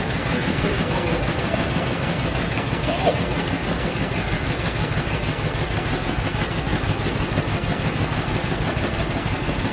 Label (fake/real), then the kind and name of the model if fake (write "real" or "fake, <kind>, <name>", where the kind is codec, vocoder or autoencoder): fake, codec, SNAC